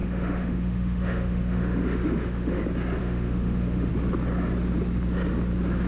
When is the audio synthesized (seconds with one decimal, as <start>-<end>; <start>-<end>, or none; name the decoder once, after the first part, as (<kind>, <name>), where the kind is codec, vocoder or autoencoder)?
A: 0.0-2.6 (autoencoder, DAC-VAE); 3.0-3.9